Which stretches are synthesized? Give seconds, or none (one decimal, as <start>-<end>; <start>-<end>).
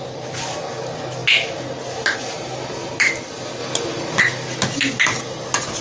none